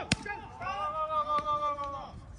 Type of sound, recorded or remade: remade